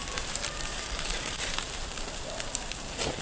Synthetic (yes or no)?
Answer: yes